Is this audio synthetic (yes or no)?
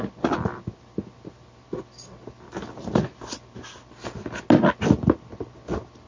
no